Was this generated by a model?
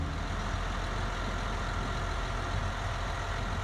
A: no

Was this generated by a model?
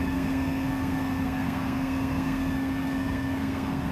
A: yes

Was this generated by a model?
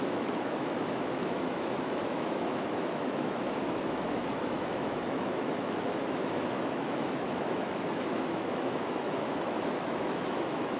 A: yes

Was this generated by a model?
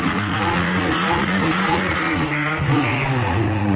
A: yes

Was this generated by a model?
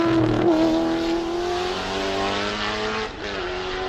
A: no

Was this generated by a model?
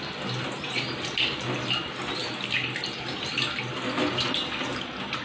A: no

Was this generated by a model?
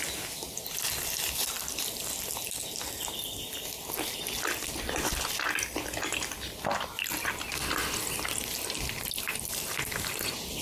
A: no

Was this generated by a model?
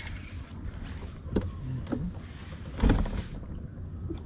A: no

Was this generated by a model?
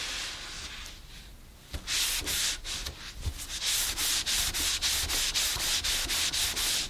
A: no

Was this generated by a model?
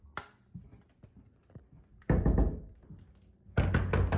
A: no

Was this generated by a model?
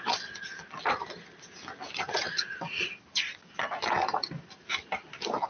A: no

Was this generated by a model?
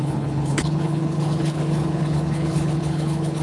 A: yes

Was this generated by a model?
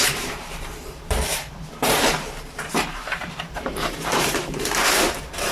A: yes